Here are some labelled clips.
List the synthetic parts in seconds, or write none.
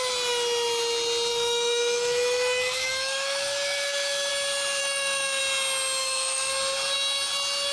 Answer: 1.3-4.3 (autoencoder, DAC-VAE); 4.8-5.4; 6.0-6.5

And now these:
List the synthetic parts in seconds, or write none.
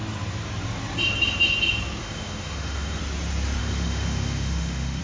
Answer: 2.0-3.0 (autoencoder, DAC-VAE); 3.6-5.0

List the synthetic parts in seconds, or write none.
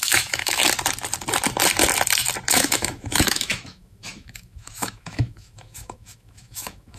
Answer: 0.0-0.6 (autoencoder, DAC-VAE); 2.5-7.0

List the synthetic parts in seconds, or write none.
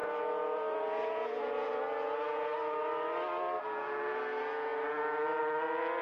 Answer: none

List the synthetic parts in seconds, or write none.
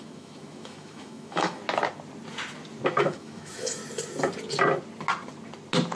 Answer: 0.0-1.6 (autoencoder, DAC-VAE); 3.0-3.8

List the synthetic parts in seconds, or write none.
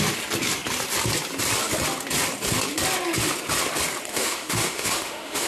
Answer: 4.1-5.5 (autoencoder, DAC-VAE)